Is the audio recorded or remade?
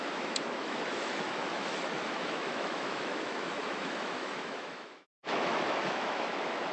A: remade